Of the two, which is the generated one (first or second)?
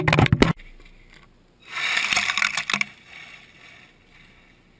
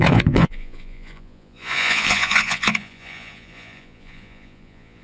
second